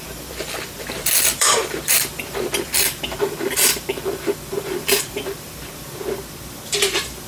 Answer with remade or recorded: remade